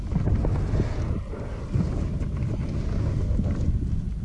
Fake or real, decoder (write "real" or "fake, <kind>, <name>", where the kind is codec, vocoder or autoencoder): real